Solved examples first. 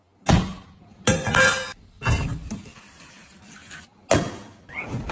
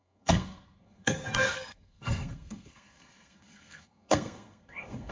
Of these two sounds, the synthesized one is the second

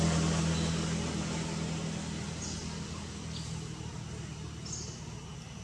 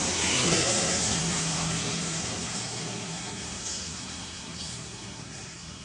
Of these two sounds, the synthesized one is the second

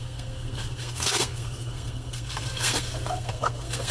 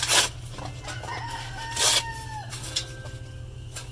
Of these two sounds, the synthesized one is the first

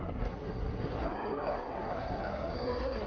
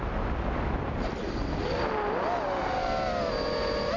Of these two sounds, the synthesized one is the first